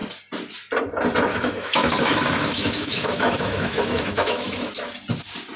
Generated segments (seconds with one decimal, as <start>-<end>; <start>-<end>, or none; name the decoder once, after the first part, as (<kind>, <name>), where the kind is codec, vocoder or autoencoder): 1.3-4.7 (autoencoder, DAC-VAE)